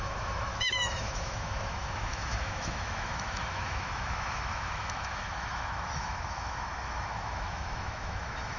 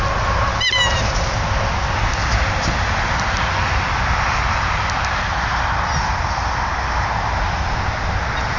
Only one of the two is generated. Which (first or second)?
first